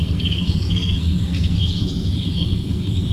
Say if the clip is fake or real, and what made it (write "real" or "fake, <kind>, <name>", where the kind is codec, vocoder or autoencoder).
fake, codec, SNAC